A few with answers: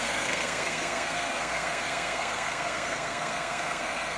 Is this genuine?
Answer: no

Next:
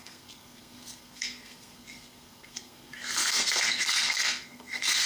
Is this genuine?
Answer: no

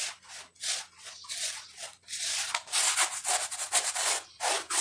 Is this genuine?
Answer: yes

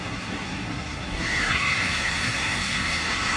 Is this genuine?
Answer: no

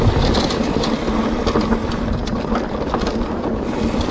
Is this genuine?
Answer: yes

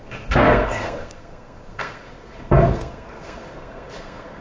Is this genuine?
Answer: no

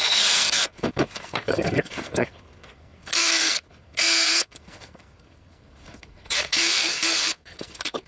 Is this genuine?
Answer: no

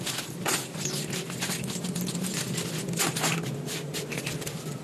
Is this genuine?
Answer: yes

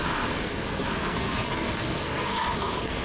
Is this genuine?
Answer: no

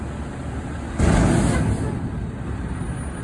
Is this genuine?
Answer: yes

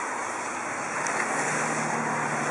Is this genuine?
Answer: yes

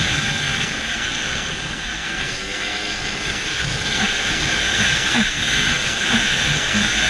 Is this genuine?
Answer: no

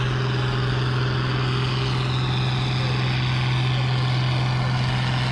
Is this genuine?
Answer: yes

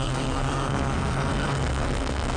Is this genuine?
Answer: no